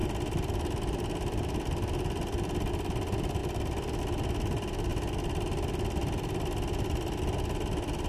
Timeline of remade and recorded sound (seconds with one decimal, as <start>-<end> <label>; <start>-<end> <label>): 0.0-8.1 recorded